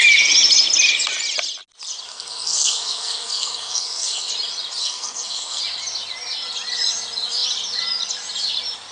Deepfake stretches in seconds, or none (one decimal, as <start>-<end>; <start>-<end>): 2.1-4.3; 4.8-5.6